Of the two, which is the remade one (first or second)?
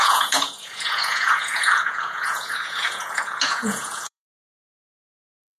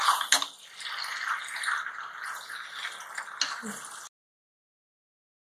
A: first